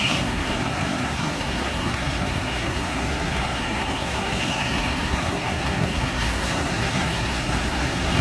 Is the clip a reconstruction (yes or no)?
yes